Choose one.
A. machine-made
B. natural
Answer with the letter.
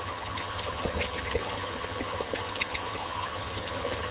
A